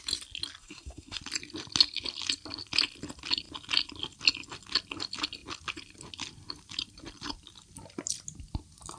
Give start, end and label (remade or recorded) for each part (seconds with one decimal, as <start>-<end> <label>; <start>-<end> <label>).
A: 0.0-0.6 recorded; 0.6-1.2 remade; 1.2-9.0 recorded